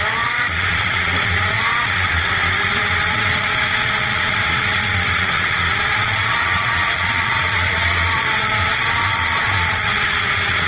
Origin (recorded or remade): remade